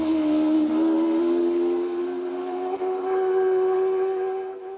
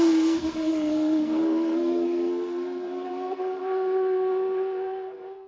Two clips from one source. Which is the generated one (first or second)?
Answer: second